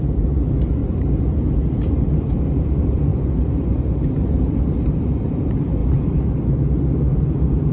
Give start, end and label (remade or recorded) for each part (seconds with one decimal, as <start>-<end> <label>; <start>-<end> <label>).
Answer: 0.0-7.7 remade